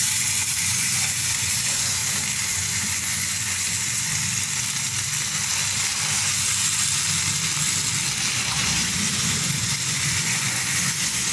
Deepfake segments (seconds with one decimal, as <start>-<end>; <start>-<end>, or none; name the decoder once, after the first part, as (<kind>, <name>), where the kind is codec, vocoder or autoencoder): 0.0-2.0 (vocoder, Vocos); 2.5-4.1; 8.3-11.3